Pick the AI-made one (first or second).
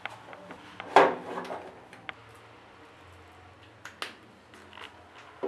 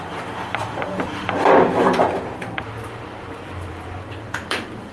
second